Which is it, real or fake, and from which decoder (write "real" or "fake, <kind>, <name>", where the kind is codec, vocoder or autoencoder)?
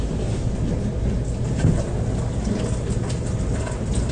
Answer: real